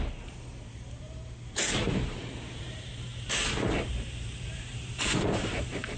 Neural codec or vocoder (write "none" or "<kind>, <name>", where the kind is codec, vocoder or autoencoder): vocoder, BigVGAN v2